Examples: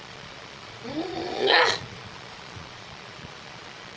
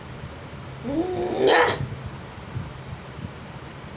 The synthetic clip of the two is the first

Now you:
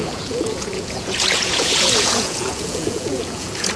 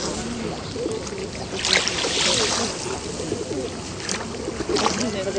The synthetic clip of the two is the first